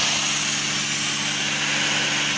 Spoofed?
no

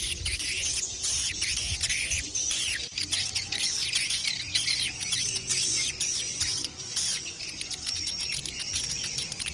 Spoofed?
yes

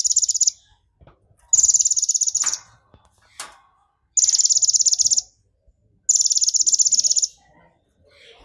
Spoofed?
no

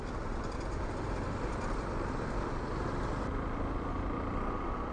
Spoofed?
no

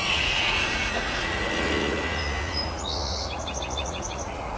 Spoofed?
yes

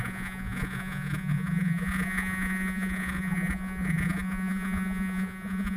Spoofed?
yes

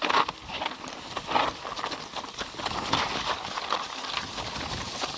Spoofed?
no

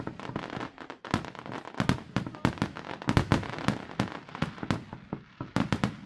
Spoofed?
no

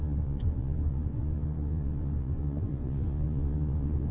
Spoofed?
yes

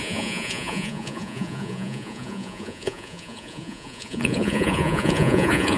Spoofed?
yes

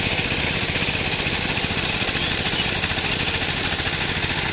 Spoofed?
no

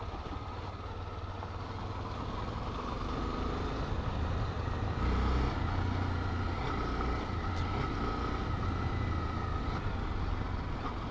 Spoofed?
no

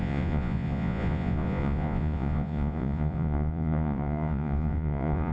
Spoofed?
yes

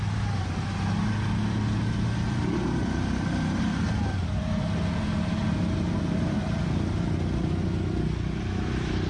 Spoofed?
no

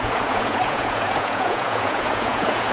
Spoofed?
yes